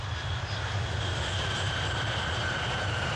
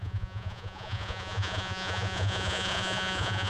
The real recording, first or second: first